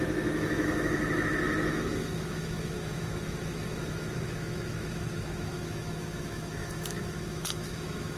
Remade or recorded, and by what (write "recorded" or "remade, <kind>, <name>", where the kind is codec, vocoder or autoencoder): remade, autoencoder, DAC-VAE